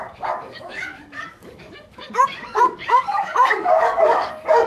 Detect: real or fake fake